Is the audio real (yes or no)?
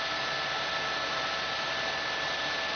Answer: yes